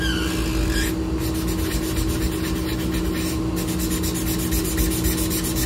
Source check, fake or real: real